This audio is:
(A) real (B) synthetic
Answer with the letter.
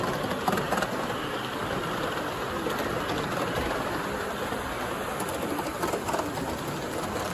A